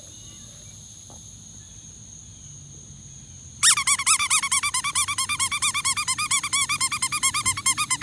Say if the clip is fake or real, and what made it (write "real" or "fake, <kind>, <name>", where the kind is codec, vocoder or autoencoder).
real